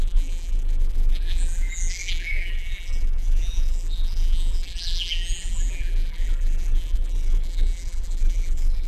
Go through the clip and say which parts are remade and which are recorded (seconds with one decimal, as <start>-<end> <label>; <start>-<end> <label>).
0.0-8.9 remade